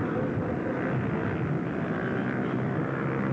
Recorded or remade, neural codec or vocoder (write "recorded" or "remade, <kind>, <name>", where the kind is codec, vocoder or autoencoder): recorded